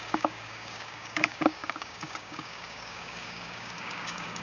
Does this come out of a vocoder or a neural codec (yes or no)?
yes